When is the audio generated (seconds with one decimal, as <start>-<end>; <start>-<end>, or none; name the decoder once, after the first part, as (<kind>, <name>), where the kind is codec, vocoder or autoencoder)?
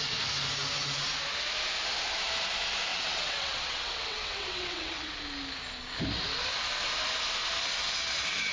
2.9-5.1 (vocoder, WaveNeXt)